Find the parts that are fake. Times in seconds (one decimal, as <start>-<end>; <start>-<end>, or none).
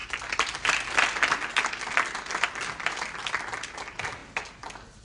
none